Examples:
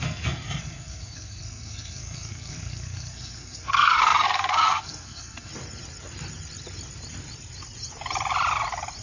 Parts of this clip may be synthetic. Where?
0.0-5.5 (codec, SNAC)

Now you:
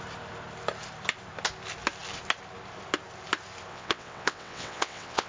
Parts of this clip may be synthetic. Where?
3.7-5.3 (vocoder, WaveNeXt)

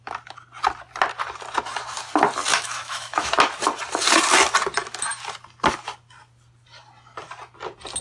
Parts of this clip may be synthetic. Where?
2.5-3.3 (autoencoder, DAC-VAE)